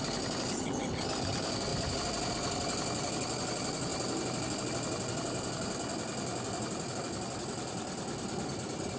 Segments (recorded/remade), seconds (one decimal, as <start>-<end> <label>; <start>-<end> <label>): 0.0-1.7 recorded; 1.7-2.3 remade; 2.3-9.0 recorded

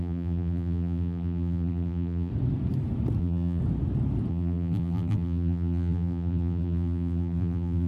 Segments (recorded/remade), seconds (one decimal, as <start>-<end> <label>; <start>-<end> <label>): 0.0-2.3 remade; 2.3-3.2 recorded; 3.2-3.6 remade; 3.6-4.3 recorded; 4.3-7.9 remade

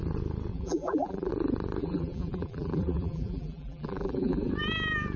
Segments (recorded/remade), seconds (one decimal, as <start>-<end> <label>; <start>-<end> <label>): 0.0-0.5 recorded; 0.5-1.3 remade; 1.3-1.8 recorded; 1.8-4.5 remade; 4.5-5.2 recorded

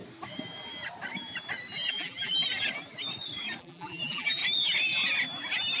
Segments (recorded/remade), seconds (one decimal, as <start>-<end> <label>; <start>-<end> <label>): 0.0-1.9 recorded; 1.9-2.4 remade; 2.4-3.6 recorded; 3.6-4.4 remade; 4.4-5.8 recorded

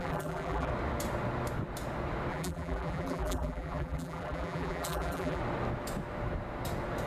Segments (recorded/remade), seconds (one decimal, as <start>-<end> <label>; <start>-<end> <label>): 0.0-0.7 remade; 0.7-2.3 recorded; 2.3-5.4 remade; 5.4-7.1 recorded